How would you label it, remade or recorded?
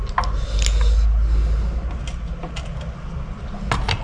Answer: recorded